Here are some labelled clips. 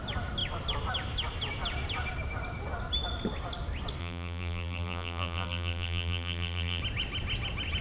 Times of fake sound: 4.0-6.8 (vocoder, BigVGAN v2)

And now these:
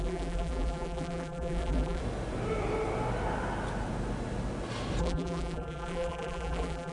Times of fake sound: 0.0-2.0 (vocoder, BigVGAN v2); 5.0-6.9

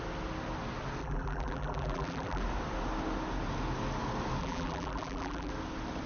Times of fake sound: 1.0-2.4 (vocoder, BigVGAN v2); 4.4-5.5

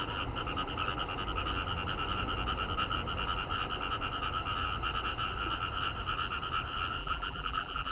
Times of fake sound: 7.0-7.9 (vocoder, BigVGAN v2)

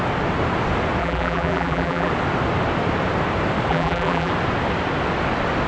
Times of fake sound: 1.0-2.1 (vocoder, BigVGAN v2); 3.7-4.3